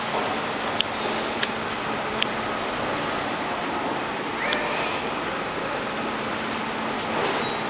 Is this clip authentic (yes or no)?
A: yes